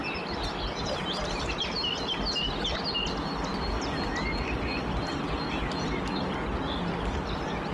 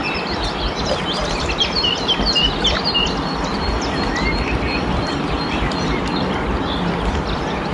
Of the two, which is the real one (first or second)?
first